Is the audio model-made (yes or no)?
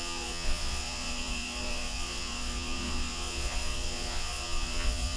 yes